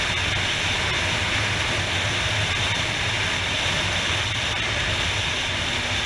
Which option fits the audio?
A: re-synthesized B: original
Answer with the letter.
B